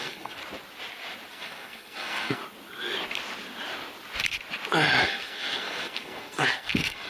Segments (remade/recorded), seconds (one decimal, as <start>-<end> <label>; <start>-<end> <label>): 0.0-0.4 remade; 0.4-1.3 recorded; 1.3-2.4 remade; 2.4-5.0 recorded; 5.0-7.1 remade